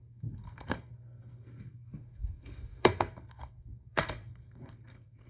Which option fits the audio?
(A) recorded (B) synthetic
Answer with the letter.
B